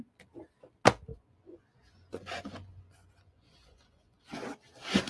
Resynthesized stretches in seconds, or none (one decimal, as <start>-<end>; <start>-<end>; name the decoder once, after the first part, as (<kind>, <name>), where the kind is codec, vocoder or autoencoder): 1.1-4.2 (vocoder, Vocos)